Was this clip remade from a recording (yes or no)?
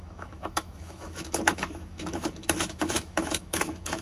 yes